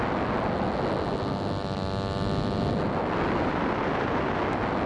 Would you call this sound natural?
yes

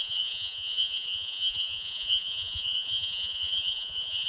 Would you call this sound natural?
no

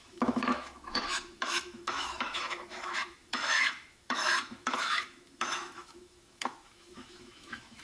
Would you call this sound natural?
no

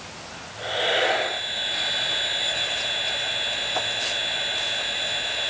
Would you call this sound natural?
yes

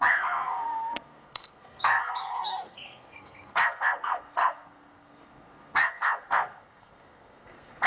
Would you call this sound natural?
no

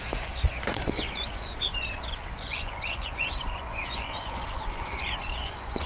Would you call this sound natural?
no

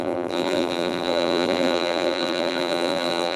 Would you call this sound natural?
no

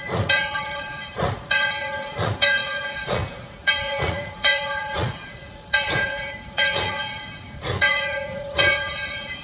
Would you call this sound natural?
no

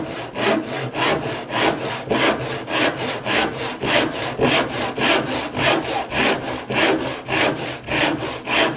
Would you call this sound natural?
yes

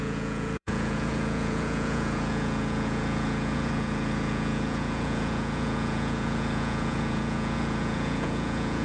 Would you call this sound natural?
no